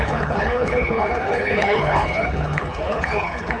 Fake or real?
fake